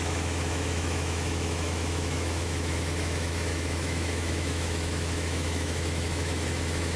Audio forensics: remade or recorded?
remade